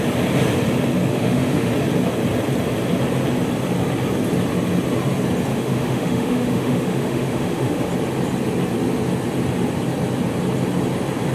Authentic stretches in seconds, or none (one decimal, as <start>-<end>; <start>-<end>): 0.0-1.1; 1.7-5.5; 7.9-11.3